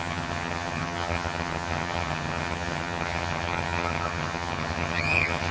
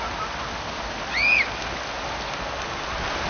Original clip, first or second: second